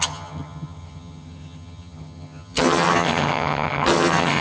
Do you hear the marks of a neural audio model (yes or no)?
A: yes